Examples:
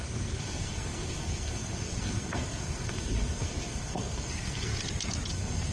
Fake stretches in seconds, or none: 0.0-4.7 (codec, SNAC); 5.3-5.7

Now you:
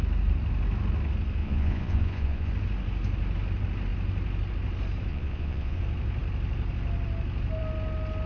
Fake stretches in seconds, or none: 1.4-2.5 (vocoder, Vocos); 5.1-5.8